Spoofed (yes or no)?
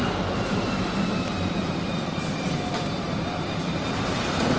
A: yes